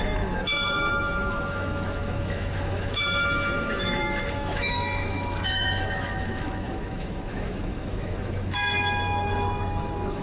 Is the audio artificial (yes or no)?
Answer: yes